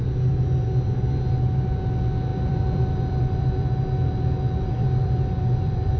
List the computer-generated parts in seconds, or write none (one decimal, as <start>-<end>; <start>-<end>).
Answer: 2.3-6.0